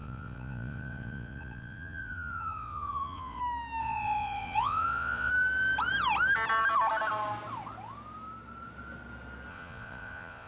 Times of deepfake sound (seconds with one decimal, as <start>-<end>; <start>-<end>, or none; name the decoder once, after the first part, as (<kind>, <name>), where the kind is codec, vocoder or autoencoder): 0.0-3.4 (vocoder, Vocos); 3.8-5.3; 9.5-10.5

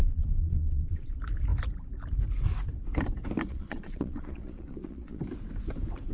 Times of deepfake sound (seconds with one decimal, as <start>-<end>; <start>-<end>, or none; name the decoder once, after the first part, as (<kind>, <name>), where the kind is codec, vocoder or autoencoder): 0.0-1.1 (vocoder, Vocos); 3.5-5.2

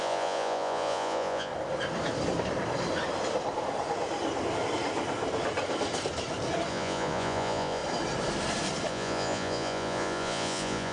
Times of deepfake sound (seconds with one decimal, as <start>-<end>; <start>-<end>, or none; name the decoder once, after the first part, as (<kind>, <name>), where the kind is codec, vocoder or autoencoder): 0.0-1.5 (vocoder, Vocos); 6.7-7.8; 8.9-10.9

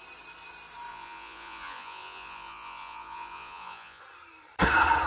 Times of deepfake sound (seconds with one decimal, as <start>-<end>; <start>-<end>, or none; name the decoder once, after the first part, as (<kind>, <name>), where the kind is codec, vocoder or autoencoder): 0.9-4.0 (vocoder, Vocos)